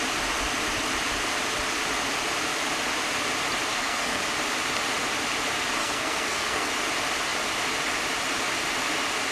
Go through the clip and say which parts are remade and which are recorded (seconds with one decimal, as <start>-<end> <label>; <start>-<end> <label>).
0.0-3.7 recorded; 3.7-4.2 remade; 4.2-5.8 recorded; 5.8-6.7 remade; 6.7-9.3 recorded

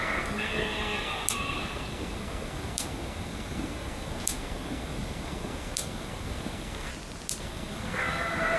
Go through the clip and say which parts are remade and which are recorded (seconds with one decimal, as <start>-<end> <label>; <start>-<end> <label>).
0.0-6.9 remade; 6.9-7.4 recorded; 7.4-8.6 remade

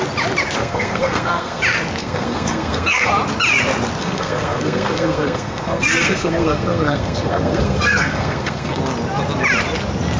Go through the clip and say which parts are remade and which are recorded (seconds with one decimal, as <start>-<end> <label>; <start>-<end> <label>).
0.0-0.6 recorded; 0.6-1.6 remade; 1.6-2.0 recorded; 2.0-3.1 remade; 3.1-4.0 recorded; 4.0-8.8 remade; 8.8-10.2 recorded